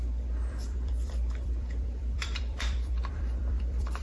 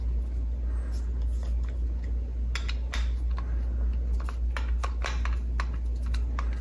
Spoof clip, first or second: first